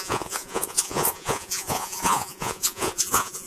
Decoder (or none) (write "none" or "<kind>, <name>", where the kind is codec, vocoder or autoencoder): vocoder, Vocos